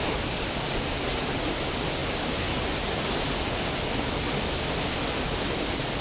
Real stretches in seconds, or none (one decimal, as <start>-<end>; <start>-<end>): 0.0-6.0